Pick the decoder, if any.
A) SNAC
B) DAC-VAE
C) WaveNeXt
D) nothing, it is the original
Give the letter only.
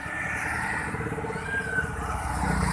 D